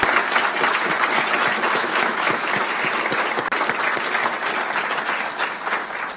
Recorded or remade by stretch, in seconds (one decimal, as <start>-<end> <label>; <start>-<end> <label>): 0.0-1.8 recorded; 1.8-2.5 remade; 2.5-6.2 recorded